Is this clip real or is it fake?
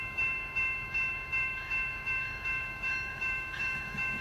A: fake